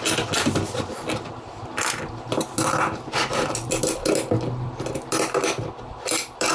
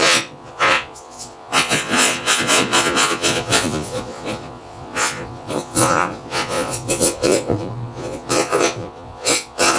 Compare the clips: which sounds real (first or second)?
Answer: first